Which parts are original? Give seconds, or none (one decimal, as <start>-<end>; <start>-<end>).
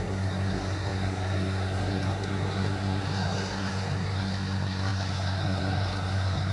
none